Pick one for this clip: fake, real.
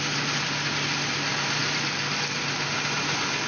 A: real